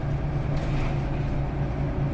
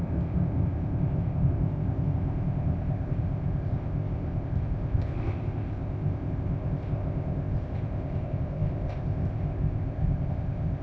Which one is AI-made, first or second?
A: second